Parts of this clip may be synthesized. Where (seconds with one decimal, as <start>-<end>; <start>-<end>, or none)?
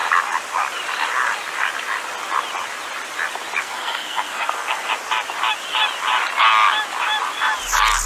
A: 3.6-4.9